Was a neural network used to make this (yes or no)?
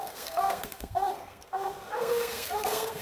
yes